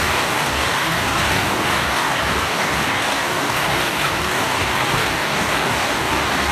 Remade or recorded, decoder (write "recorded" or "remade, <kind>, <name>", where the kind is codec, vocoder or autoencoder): remade, codec, DAC